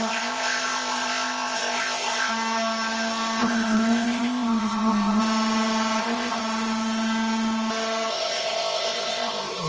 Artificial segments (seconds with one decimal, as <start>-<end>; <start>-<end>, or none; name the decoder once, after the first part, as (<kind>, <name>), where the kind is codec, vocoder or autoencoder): 0.0-2.3 (codec, ZipCodec); 3.4-5.2; 6.0-6.4; 8.1-9.7

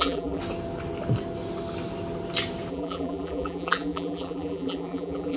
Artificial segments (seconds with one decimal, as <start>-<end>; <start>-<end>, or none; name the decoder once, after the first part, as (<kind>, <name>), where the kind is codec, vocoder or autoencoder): 0.0-0.4 (vocoder, BigVGAN v2); 2.7-5.4

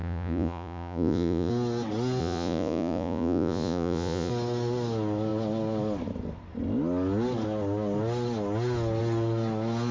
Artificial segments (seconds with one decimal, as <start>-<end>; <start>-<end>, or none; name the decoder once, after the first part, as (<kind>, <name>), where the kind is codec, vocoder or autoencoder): 0.0-1.5 (vocoder, Vocos); 2.2-4.3

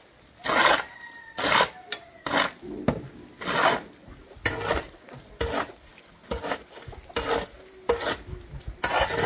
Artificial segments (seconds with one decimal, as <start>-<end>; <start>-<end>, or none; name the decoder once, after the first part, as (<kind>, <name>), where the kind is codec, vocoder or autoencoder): none

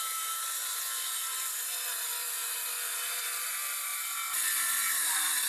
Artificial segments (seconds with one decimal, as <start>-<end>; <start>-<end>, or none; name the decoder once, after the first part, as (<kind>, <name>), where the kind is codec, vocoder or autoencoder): 0.0-3.9 (vocoder, BigVGAN v2); 5.0-5.5

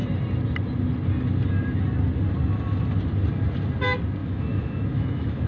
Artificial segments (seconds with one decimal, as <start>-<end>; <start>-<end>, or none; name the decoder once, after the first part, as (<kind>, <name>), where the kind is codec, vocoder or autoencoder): 4.2-5.5 (autoencoder, DAC-VAE)

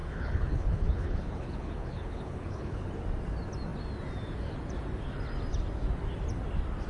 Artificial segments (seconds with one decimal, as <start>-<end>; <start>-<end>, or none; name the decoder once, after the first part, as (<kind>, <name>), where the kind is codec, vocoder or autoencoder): 0.0-2.9 (codec, HILCodec)